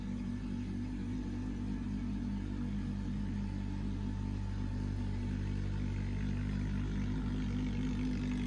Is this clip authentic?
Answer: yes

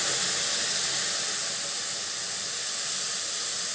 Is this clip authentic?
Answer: yes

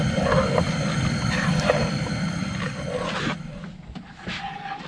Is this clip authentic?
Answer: yes